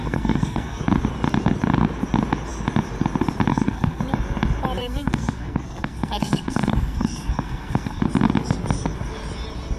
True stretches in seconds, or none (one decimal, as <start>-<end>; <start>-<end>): 0.8-3.5; 4.0-4.8; 8.0-9.8